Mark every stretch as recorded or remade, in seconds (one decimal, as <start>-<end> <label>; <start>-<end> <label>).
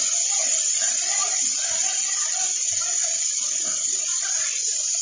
0.0-0.4 recorded; 0.4-0.9 remade; 0.9-1.8 recorded; 1.8-5.0 remade